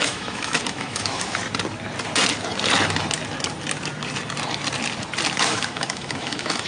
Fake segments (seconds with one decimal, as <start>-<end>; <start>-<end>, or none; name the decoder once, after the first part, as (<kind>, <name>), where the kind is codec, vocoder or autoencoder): 0.0-1.4 (autoencoder, DAC-VAE); 5.4-6.7